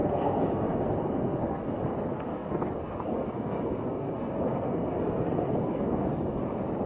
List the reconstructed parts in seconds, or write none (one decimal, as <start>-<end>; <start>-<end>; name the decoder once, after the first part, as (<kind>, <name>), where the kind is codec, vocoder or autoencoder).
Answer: 0.0-1.8 (codec, SNAC); 2.3-6.4